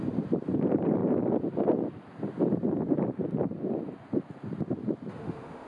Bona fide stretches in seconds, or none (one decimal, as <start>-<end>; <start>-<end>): 0.0-5.2